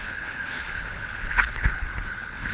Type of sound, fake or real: fake